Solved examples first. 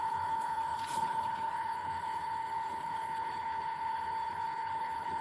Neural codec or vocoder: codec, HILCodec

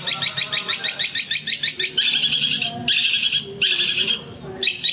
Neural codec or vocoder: none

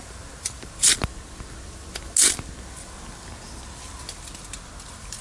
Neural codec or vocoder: none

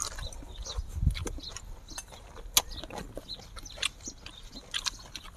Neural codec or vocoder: none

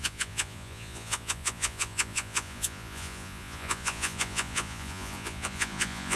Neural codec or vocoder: vocoder, Vocos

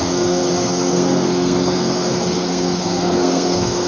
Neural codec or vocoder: codec, SNAC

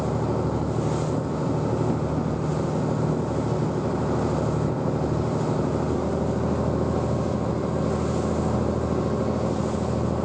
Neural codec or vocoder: none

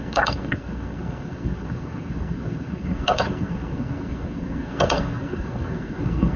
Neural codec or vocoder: codec, SNAC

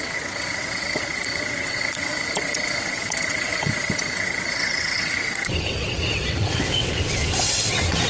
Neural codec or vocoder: vocoder, WaveNeXt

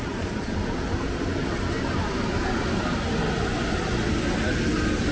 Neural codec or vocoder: none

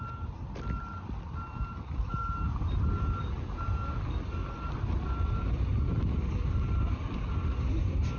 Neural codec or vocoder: none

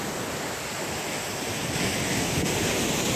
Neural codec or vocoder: none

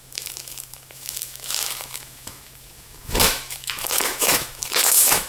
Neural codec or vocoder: autoencoder, DAC-VAE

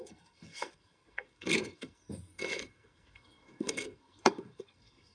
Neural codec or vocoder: codec, SNAC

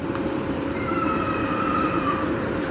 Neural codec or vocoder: vocoder, BigVGAN v2